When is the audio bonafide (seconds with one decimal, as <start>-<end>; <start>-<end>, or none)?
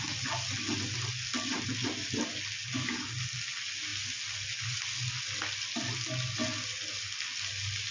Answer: 0.0-7.9